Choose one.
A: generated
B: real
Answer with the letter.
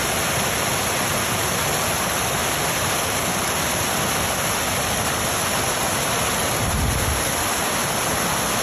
B